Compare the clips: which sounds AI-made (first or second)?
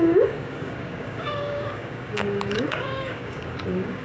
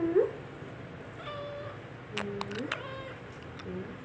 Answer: first